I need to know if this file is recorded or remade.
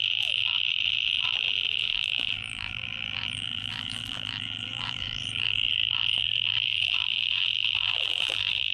remade